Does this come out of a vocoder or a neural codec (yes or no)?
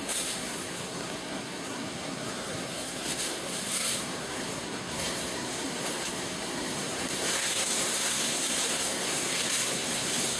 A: yes